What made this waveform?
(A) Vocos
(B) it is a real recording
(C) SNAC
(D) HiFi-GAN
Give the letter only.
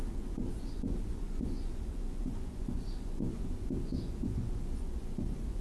A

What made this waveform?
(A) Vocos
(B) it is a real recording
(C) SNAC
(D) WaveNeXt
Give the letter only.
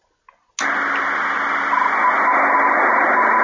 B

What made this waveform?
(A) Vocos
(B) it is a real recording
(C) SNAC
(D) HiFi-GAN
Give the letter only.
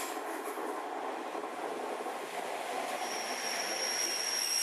B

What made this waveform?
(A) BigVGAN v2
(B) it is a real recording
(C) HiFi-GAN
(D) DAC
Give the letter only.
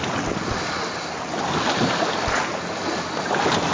B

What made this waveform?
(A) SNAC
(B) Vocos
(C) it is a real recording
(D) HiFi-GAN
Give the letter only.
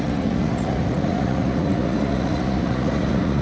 B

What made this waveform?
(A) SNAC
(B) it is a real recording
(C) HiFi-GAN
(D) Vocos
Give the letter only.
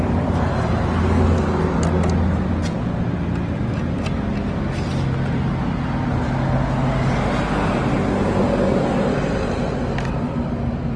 B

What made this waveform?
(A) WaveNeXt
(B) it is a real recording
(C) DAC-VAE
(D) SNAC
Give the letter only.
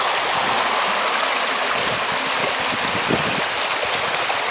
B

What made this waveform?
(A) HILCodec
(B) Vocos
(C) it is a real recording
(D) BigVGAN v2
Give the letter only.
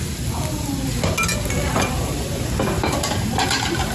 C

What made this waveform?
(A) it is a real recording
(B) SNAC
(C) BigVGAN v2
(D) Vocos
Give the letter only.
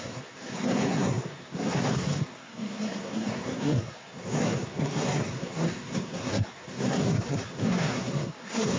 B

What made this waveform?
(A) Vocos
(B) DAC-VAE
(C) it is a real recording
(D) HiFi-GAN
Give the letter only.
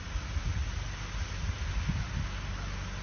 C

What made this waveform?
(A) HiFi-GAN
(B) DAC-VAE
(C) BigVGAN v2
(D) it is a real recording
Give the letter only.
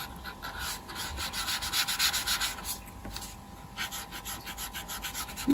D